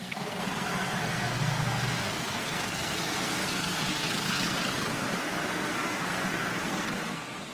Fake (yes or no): yes